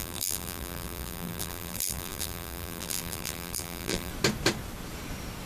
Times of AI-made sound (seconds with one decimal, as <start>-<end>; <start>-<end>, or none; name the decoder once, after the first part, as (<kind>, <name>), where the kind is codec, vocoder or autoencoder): 0.0-4.1 (vocoder, BigVGAN v2)